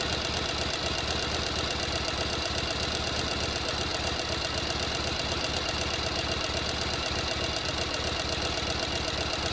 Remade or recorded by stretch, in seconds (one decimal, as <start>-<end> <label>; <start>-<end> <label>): 0.0-9.5 recorded